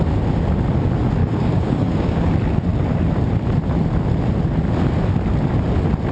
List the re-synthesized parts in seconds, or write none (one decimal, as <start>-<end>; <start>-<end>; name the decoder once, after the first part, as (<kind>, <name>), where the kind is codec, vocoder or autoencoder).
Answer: 1.2-2.3 (codec, DAC)